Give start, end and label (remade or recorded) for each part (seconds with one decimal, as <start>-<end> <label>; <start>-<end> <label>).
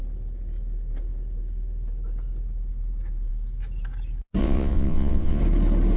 0.0-4.4 recorded; 4.4-5.4 remade; 5.4-6.0 recorded